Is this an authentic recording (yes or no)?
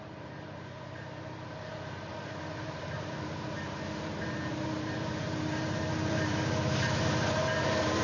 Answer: no